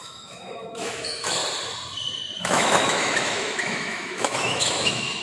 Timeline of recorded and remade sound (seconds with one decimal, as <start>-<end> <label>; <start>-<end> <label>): 0.0-1.4 remade; 1.4-2.4 recorded; 2.4-5.2 remade